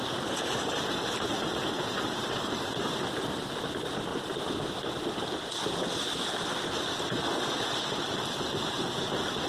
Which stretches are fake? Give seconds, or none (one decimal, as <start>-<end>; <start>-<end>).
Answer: none